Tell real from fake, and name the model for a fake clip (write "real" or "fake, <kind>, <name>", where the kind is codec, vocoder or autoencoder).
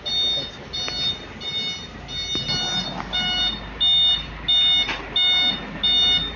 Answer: real